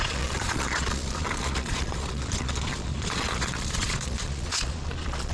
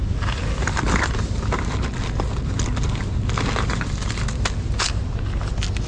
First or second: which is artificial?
first